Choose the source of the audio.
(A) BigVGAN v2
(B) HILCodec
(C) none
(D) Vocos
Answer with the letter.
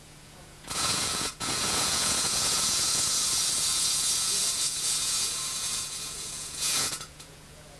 D